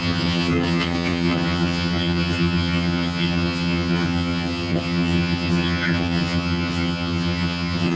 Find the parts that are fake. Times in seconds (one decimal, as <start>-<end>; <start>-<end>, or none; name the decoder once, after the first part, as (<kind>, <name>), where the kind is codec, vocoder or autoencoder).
0.0-8.0 (vocoder, HiFi-GAN)